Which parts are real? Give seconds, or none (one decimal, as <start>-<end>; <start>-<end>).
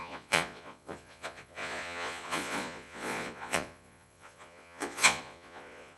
none